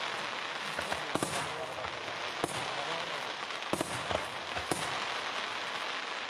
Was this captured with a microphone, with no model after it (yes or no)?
yes